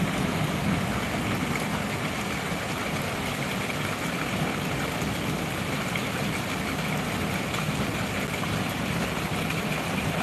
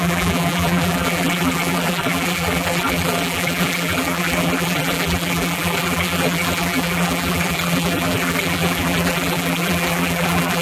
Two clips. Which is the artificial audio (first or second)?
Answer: second